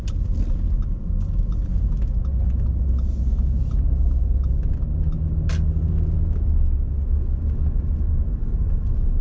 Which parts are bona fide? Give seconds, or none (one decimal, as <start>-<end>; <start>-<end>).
0.0-9.2